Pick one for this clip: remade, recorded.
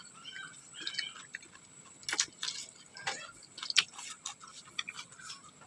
recorded